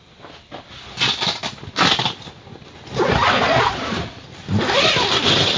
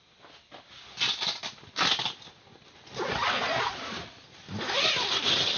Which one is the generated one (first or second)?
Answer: first